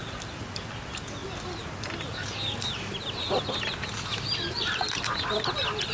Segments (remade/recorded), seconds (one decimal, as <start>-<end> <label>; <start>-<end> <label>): 0.0-5.9 recorded